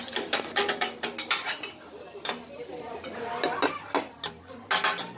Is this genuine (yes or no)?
yes